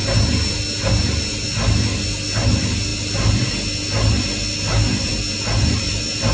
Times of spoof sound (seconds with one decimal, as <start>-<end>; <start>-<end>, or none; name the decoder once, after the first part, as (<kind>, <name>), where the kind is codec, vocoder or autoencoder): none